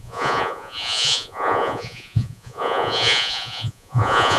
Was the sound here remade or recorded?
remade